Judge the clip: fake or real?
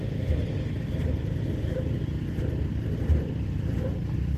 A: fake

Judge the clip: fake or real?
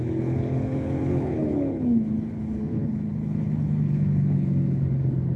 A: fake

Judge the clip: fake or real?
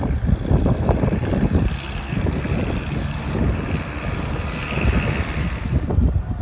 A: real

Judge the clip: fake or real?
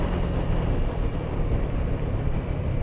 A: real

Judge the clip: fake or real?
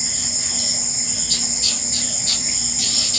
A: real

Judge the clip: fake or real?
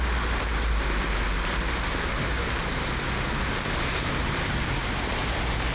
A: real